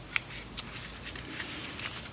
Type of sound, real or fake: real